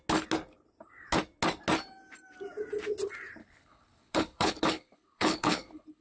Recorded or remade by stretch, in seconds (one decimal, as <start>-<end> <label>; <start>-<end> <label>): 0.0-3.4 recorded; 3.4-6.0 remade